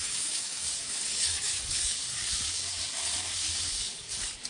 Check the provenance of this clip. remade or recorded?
remade